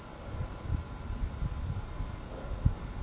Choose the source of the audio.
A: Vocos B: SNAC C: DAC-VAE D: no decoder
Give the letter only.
D